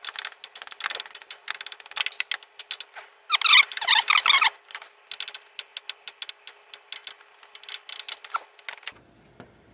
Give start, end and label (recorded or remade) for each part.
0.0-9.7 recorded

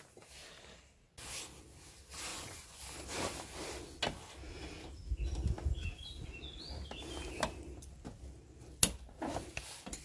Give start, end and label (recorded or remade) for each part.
0.0-2.3 recorded; 2.3-2.8 remade; 2.8-10.0 recorded

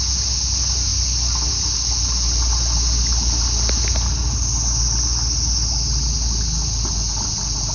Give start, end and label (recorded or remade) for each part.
0.0-7.7 recorded

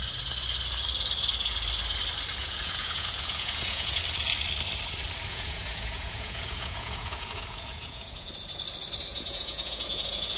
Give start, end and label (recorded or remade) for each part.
0.0-2.4 recorded; 2.4-4.0 remade; 4.0-5.3 recorded; 5.3-8.3 remade; 8.3-9.1 recorded; 9.1-10.4 remade